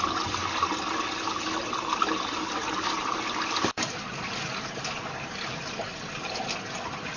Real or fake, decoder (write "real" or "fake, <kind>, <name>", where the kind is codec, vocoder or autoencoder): real